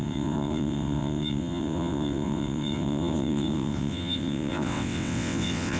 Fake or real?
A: fake